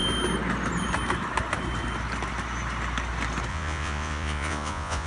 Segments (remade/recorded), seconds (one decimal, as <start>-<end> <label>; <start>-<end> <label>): 0.0-3.5 recorded; 3.5-5.1 remade

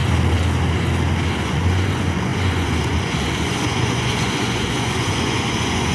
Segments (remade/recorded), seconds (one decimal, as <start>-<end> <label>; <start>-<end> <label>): 0.0-1.4 recorded; 1.4-5.9 remade

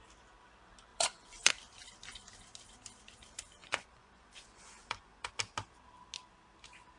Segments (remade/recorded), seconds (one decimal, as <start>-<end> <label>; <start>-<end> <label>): 0.0-0.9 recorded; 0.9-1.5 remade; 1.5-3.6 recorded; 3.6-5.3 remade; 5.3-7.0 recorded

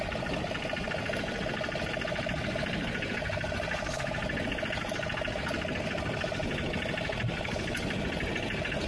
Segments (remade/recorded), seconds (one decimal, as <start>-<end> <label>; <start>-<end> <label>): 0.0-8.9 recorded

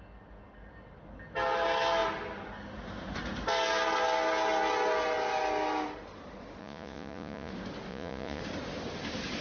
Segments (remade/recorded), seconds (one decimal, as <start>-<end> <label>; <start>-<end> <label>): 0.0-6.6 recorded; 6.6-7.5 remade; 7.5-7.9 recorded; 7.9-8.4 remade; 8.4-9.4 recorded

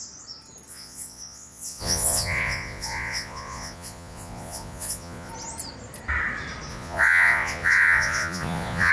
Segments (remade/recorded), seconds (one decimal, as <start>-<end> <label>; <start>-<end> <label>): 0.0-0.7 recorded; 0.7-5.3 remade; 5.3-6.7 recorded; 6.7-8.9 remade

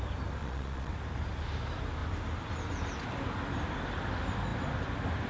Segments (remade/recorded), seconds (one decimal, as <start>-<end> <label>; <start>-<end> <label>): 0.0-0.4 recorded; 0.4-0.9 remade; 0.9-5.3 recorded